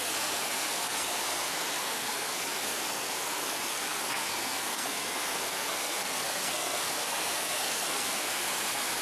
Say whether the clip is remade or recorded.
remade